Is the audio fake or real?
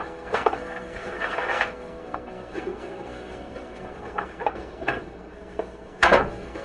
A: fake